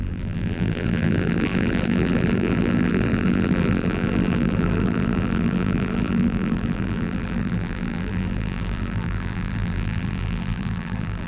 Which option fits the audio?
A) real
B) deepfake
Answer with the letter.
B